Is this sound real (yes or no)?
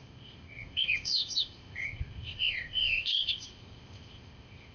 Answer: no